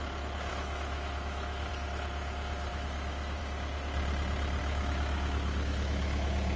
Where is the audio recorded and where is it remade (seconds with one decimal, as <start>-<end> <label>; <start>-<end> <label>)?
0.0-0.5 recorded; 0.5-1.7 remade; 1.7-2.7 recorded; 2.7-3.4 remade; 3.4-4.6 recorded; 4.6-6.6 remade